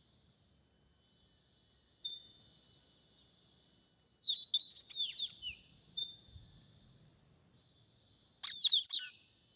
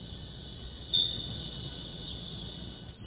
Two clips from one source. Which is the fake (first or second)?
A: second